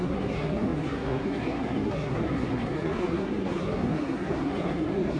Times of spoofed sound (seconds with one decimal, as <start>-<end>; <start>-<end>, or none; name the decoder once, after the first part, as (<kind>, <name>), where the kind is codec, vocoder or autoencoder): 0.0-5.2 (codec, SNAC)